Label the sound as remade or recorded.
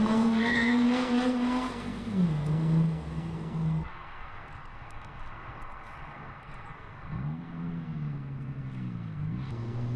remade